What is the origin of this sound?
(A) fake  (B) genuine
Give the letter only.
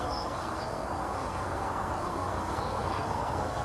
A